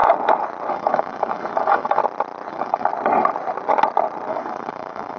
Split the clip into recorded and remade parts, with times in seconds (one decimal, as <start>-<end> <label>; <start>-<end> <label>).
0.0-0.7 recorded; 0.7-2.0 remade; 2.0-2.5 recorded; 2.5-2.9 remade; 2.9-4.3 recorded; 4.3-5.2 remade